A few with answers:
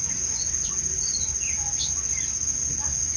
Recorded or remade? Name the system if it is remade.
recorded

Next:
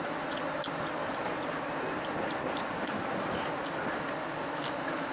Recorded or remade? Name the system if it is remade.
recorded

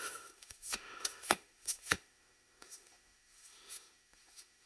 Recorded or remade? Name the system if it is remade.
remade, autoencoder, DAC-VAE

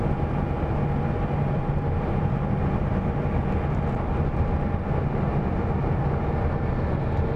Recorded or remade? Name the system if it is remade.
recorded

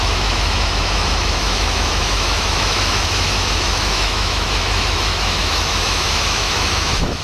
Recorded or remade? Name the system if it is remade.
remade, autoencoder, DAC-VAE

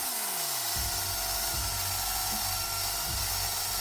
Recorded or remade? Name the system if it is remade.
recorded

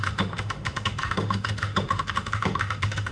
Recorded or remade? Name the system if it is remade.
remade, autoencoder, DAC-VAE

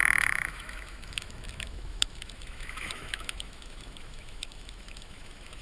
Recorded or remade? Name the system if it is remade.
remade, autoencoder, DAC-VAE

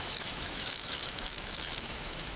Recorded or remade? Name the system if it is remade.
remade, autoencoder, DAC-VAE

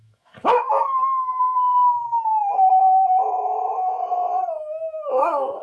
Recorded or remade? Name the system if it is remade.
remade, autoencoder, DAC-VAE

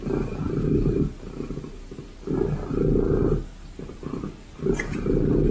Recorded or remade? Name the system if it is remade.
recorded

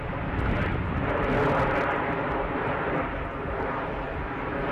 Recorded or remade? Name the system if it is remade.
recorded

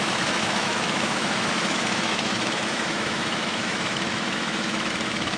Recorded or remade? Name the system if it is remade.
remade, autoencoder, DAC-VAE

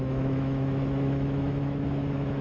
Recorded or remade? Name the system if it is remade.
remade, autoencoder, DAC-VAE